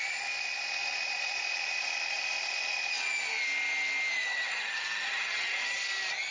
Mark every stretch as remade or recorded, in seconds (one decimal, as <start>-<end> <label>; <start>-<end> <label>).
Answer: 0.0-4.2 recorded; 4.2-5.8 remade; 5.8-6.3 recorded